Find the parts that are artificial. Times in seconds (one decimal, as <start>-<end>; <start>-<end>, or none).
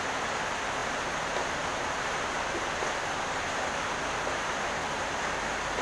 none